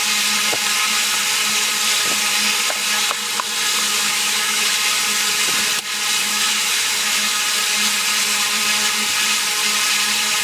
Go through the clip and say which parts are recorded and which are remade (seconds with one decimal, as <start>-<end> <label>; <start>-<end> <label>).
0.0-4.0 recorded; 4.0-4.7 remade; 4.7-6.2 recorded; 6.2-7.4 remade; 7.4-10.4 recorded